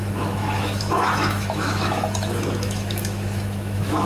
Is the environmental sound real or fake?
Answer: fake